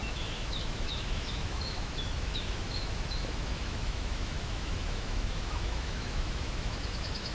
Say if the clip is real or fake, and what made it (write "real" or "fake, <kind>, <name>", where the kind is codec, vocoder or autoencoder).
fake, autoencoder, DAC-VAE